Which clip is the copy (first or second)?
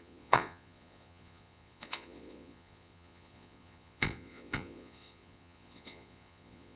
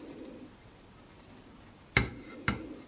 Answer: first